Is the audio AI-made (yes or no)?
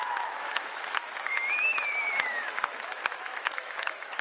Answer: yes